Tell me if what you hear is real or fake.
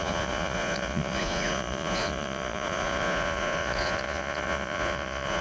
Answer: fake